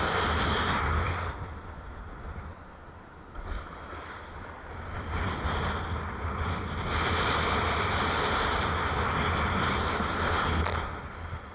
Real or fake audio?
real